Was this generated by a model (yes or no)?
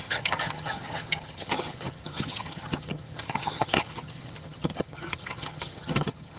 yes